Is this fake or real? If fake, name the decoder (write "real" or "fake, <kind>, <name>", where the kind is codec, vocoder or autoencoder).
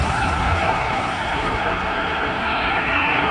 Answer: fake, codec, SNAC